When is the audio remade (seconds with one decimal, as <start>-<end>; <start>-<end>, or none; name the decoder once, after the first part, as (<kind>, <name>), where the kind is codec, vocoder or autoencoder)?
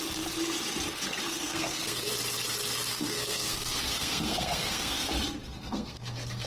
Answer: 1.2-2.1 (codec, SNAC); 2.9-5.1; 5.7-6.5